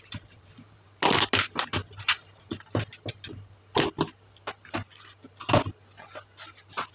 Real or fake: real